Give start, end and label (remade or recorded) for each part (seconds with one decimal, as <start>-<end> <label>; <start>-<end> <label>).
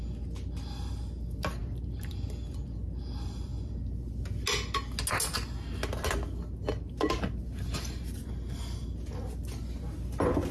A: 0.0-10.5 recorded